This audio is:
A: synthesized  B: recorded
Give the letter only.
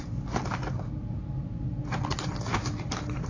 B